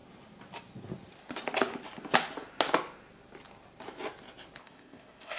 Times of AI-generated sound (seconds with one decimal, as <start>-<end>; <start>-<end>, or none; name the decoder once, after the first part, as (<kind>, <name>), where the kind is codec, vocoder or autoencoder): 4.6-5.4 (codec, ZipCodec)